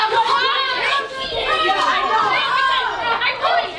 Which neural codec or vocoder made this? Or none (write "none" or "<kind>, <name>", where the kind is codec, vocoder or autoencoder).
none